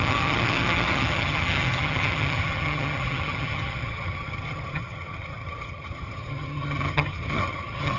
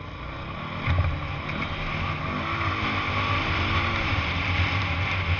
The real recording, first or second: second